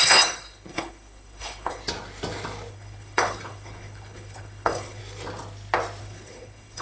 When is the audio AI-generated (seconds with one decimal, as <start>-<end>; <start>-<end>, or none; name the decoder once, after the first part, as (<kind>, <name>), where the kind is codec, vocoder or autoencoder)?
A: 0.0-1.8 (codec, HILCodec); 2.7-5.0; 6.0-6.8